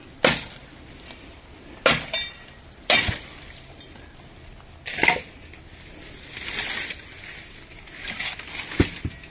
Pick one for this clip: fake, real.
real